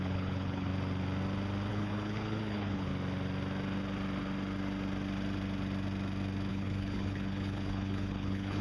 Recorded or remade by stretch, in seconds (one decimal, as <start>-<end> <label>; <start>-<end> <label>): 0.0-0.7 remade; 0.7-1.7 recorded; 1.7-2.9 remade; 2.9-6.5 recorded; 6.5-8.6 remade